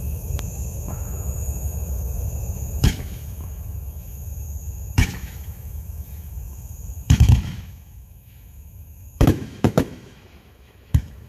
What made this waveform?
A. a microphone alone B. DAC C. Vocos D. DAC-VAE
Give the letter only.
D